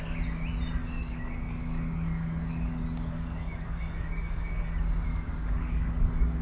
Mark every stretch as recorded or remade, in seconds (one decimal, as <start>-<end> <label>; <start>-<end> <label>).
0.0-0.8 recorded; 0.8-4.6 remade; 4.6-5.1 recorded; 5.1-6.4 remade

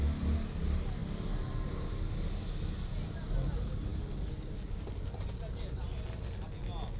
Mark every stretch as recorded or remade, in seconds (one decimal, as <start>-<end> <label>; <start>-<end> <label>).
0.0-3.9 recorded; 3.9-4.8 remade; 4.8-7.0 recorded

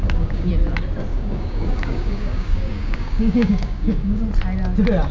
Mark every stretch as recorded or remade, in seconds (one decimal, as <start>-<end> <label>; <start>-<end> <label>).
0.0-0.5 remade; 0.5-1.1 recorded; 1.1-4.2 remade; 4.2-5.1 recorded

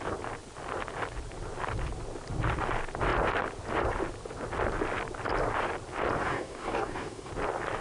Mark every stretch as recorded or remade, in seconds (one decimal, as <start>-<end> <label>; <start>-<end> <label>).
0.0-6.2 recorded; 6.2-7.3 remade; 7.3-7.8 recorded

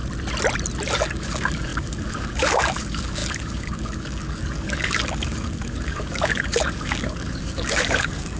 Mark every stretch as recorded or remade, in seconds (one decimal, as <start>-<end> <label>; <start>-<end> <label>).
0.0-0.9 recorded; 0.9-8.4 remade

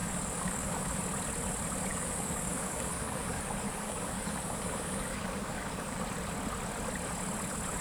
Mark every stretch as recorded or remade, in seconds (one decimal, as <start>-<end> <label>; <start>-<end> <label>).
0.0-1.0 remade; 1.0-1.9 recorded; 1.9-6.0 remade; 6.0-7.8 recorded

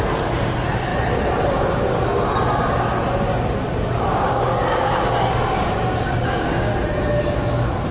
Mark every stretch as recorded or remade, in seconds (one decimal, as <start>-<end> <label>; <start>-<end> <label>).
0.0-4.1 recorded; 4.1-6.7 remade; 6.7-7.9 recorded

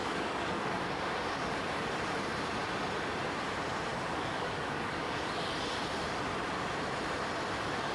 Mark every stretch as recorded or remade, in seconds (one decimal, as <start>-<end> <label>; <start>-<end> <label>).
0.0-1.3 remade; 1.3-3.9 recorded; 3.9-5.5 remade; 5.5-7.9 recorded